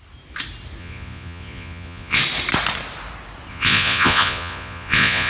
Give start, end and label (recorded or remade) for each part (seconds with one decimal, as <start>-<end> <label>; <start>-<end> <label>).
0.0-0.8 recorded; 0.8-2.2 remade; 2.2-3.5 recorded; 3.5-5.3 remade

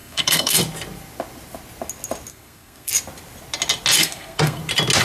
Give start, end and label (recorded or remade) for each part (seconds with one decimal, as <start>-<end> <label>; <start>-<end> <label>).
0.0-0.6 remade; 0.6-2.3 recorded; 2.3-2.9 remade; 2.9-4.0 recorded; 4.0-4.6 remade; 4.6-5.0 recorded

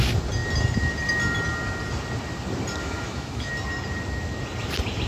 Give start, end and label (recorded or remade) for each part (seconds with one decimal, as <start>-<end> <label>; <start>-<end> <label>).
0.0-2.8 recorded; 2.8-3.5 remade; 3.5-5.1 recorded

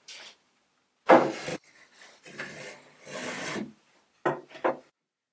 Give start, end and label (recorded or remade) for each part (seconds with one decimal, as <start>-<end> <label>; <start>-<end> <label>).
0.0-5.3 recorded